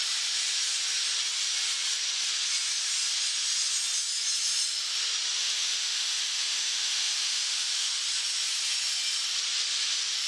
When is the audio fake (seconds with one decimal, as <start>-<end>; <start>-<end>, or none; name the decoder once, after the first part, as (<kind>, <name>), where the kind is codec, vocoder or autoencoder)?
5.4-7.9 (autoencoder, DAC-VAE)

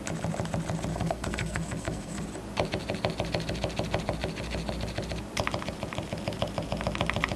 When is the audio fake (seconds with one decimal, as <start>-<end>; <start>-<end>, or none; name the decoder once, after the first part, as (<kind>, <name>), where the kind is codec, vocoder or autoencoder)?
0.9-2.2 (codec, SNAC)